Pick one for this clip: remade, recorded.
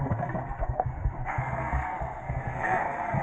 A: remade